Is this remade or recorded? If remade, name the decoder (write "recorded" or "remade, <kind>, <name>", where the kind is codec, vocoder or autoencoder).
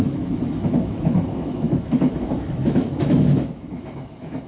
remade, autoencoder, DAC-VAE